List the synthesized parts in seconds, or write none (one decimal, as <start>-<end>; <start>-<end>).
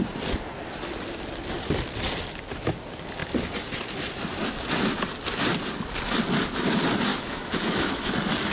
7.1-8.1